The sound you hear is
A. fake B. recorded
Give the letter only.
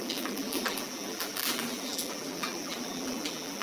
A